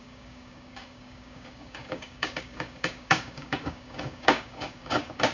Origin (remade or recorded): remade